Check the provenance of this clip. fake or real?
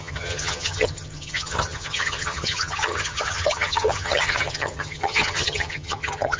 fake